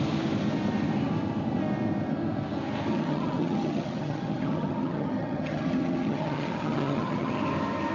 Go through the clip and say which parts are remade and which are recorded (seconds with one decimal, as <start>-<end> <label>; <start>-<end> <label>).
0.0-2.9 recorded; 2.9-7.4 remade; 7.4-7.9 recorded